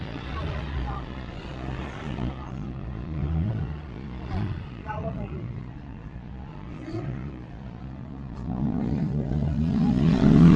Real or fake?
fake